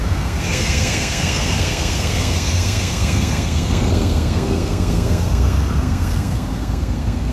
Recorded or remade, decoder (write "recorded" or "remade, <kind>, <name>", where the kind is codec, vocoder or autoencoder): remade, codec, SNAC